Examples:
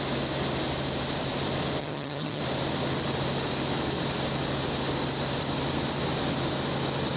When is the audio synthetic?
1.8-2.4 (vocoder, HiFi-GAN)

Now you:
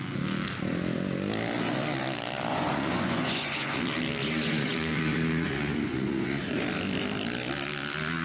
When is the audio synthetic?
2.5-3.8 (vocoder, Vocos); 4.2-6.6

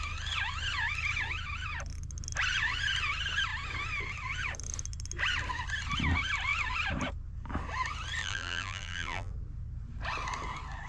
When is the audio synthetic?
8.2-9.3 (vocoder, BigVGAN v2)

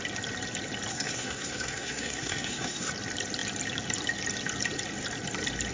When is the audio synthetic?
0.9-2.9 (codec, SNAC)